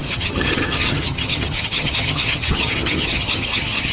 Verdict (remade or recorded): remade